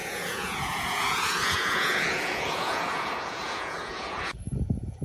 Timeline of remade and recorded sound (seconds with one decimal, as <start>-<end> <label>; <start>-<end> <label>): 0.0-5.0 remade